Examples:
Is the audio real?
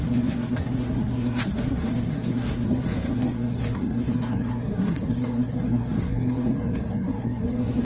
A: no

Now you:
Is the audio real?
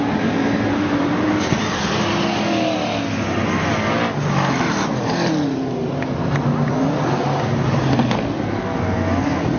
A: yes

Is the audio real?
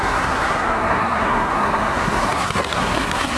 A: no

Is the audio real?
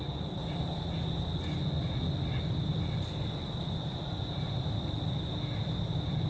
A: yes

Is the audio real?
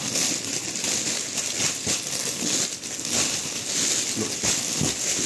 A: yes